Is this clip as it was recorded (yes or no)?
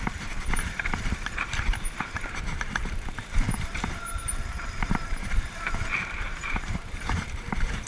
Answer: no